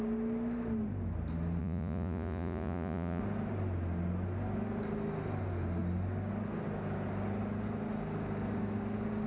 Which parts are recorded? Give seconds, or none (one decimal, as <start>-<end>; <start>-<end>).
0.0-1.6; 3.2-9.3